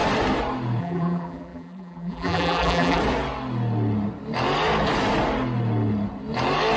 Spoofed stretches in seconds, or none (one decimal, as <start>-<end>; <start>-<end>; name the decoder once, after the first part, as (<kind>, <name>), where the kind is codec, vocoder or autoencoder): 0.8-3.0 (vocoder, BigVGAN v2)